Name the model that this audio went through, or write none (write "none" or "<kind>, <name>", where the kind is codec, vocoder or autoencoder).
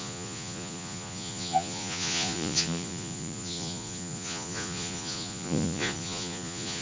vocoder, Vocos